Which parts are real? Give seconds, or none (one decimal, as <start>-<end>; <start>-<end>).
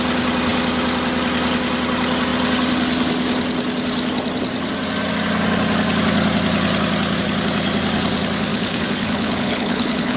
0.0-8.5